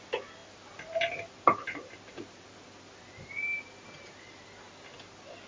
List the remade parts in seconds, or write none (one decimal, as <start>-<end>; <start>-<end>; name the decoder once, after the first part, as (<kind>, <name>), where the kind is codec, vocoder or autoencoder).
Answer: none